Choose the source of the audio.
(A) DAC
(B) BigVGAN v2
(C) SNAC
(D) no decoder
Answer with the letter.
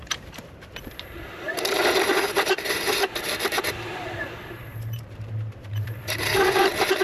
B